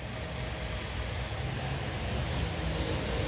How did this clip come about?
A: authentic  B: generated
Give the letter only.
A